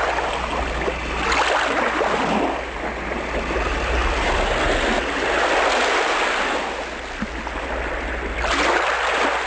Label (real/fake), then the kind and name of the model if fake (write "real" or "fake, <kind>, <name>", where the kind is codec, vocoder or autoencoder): real